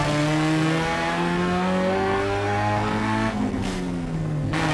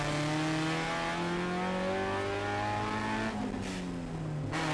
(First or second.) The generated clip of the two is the first